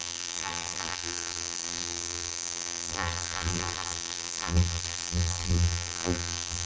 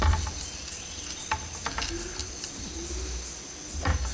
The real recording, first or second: second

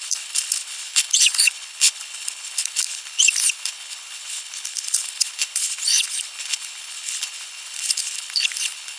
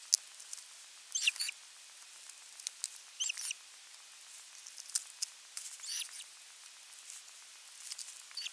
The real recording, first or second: second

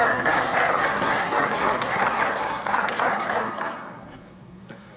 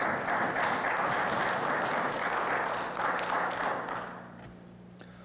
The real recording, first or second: second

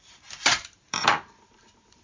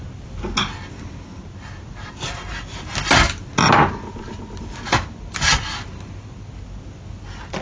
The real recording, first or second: second